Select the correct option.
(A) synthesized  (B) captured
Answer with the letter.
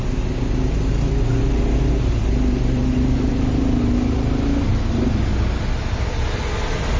B